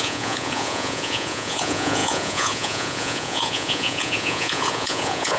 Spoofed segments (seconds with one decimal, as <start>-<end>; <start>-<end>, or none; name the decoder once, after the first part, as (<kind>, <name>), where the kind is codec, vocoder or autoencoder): 0.0-5.4 (vocoder, Vocos)